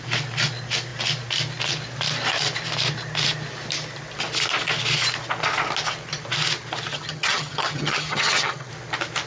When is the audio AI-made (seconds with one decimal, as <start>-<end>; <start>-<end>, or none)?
6.9-8.7

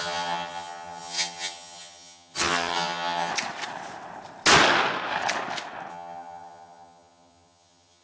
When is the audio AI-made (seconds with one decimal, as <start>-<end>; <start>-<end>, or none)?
0.0-3.3; 5.9-8.0